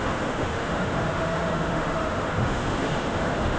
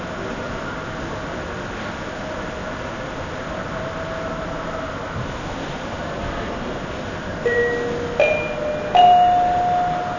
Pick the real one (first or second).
second